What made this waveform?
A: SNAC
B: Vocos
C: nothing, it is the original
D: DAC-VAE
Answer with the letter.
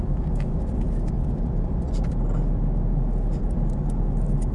C